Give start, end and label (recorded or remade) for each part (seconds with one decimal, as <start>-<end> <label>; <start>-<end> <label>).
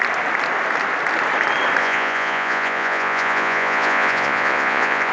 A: 0.0-1.8 recorded; 1.8-5.1 remade